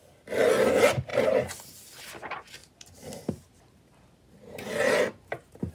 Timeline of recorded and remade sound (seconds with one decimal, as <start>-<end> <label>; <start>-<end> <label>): 0.0-2.6 recorded; 2.6-5.7 remade